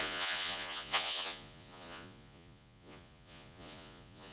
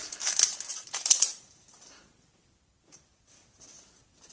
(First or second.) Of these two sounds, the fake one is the first